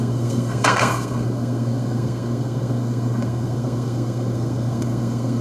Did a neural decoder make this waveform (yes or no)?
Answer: yes